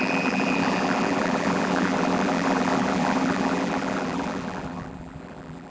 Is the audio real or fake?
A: fake